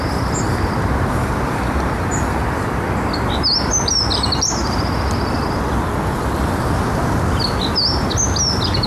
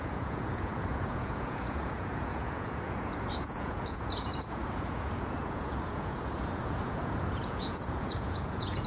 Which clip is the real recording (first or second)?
first